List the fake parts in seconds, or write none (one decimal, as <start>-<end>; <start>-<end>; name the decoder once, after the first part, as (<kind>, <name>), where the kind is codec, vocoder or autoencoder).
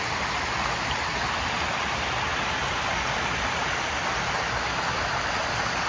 none